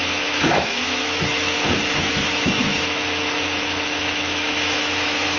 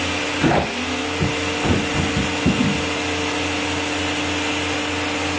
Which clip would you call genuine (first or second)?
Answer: second